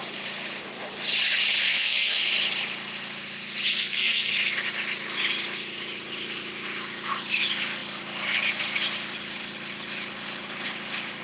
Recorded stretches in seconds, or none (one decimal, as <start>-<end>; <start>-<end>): 0.0-1.7; 2.2-3.7; 4.3-11.2